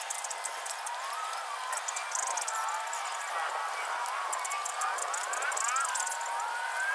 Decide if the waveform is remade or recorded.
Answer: recorded